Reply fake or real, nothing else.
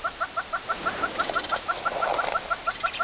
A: real